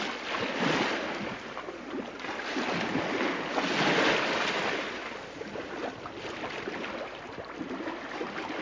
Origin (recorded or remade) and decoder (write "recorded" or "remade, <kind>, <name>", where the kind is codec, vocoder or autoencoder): recorded